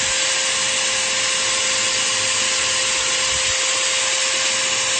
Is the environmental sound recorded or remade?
recorded